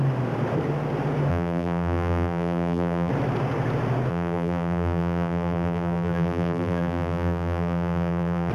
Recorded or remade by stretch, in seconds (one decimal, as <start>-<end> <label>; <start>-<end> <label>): 0.0-1.3 recorded; 1.3-3.1 remade; 3.1-4.1 recorded; 4.1-8.5 remade